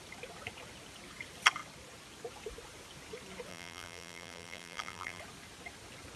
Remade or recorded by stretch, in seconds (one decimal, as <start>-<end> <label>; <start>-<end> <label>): 0.0-3.5 recorded; 3.5-5.2 remade; 5.2-6.2 recorded